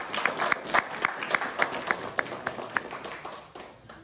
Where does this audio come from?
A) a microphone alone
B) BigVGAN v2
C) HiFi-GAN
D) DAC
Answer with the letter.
A